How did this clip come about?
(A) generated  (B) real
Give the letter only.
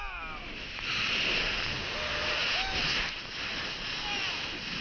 B